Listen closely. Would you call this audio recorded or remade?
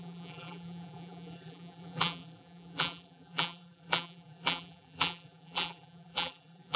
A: remade